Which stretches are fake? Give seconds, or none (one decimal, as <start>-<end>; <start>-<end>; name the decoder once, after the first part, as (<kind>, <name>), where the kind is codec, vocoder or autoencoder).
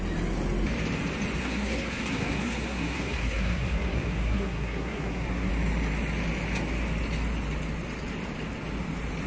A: 1.4-5.5 (codec, SNAC)